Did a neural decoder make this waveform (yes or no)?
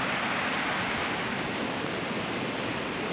no